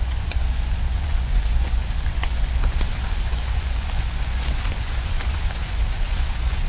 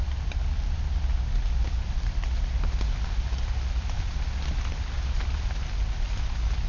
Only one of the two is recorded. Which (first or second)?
second